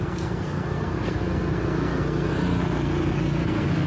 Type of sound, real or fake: fake